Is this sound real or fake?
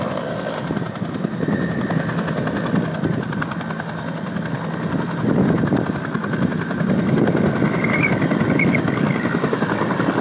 real